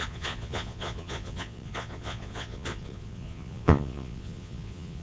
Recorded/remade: remade